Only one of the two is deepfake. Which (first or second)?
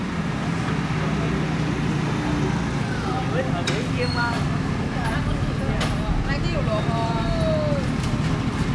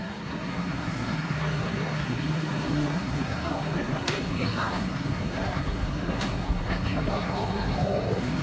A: second